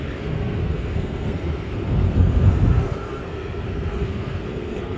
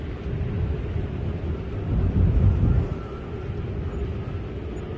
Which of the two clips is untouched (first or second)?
second